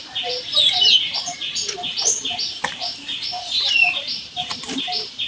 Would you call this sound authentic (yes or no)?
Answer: no